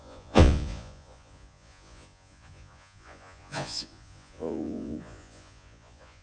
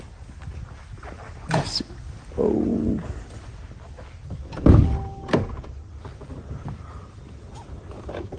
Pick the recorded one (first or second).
second